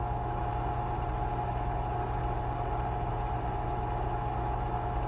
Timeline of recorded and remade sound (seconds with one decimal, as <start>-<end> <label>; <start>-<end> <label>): 0.0-0.5 remade; 0.5-1.4 recorded; 1.4-2.2 remade; 2.2-3.1 recorded; 3.1-5.1 remade